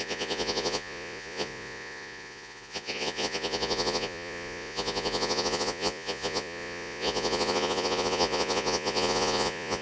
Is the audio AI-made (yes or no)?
yes